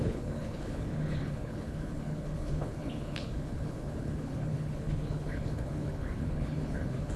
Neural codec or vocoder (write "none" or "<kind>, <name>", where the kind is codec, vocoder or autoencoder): codec, HILCodec